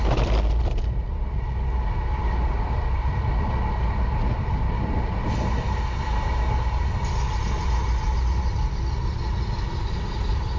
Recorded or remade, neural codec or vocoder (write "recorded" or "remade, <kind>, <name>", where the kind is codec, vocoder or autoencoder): recorded